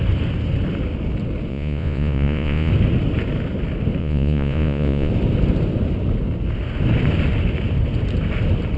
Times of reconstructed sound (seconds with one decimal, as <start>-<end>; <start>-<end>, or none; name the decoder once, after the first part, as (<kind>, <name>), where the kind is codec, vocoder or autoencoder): 1.5-2.7 (vocoder, Vocos); 4.0-5.1